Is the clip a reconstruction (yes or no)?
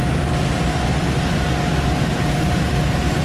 no